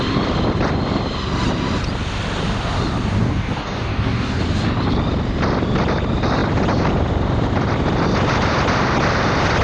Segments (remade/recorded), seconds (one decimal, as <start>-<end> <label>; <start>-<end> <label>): 0.0-3.2 recorded; 3.2-4.4 remade; 4.4-9.6 recorded